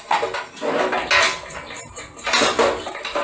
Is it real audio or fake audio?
real